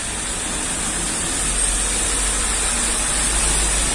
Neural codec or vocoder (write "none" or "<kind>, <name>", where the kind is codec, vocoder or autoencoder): none